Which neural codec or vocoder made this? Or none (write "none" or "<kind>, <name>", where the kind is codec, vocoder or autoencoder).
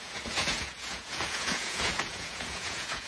vocoder, Vocos